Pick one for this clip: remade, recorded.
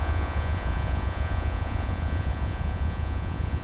remade